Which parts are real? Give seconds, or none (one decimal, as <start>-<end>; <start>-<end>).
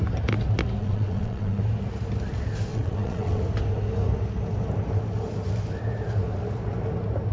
0.0-0.8; 1.6-2.7; 3.4-7.3